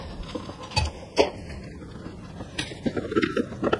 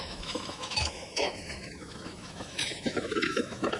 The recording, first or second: first